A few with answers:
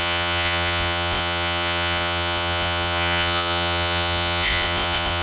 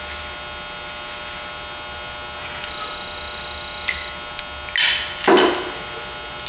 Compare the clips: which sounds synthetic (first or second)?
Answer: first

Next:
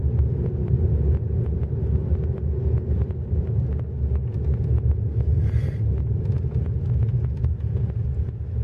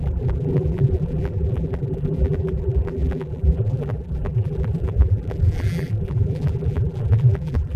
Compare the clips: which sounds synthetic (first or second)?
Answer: second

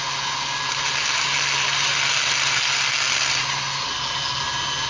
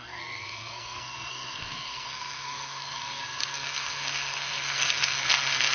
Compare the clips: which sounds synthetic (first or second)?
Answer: second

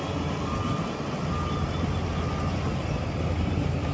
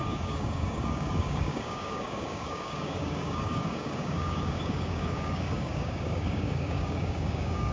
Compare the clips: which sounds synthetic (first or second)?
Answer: second